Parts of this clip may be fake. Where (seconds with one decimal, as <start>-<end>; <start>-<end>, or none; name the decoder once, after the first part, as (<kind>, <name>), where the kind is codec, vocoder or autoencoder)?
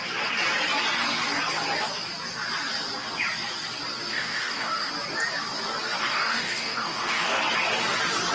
4.1-4.9 (codec, DAC); 6.0-7.4